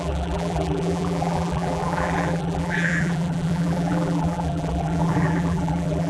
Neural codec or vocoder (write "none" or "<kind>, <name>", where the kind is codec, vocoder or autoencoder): vocoder, BigVGAN v2